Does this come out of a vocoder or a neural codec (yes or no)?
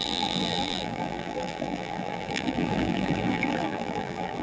yes